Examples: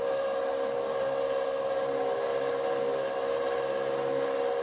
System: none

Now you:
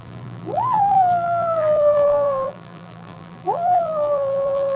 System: vocoder, BigVGAN v2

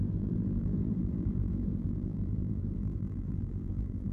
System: vocoder, BigVGAN v2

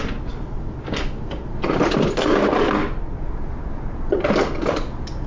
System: none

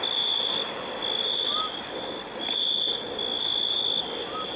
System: none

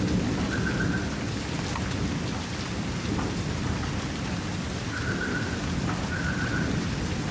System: none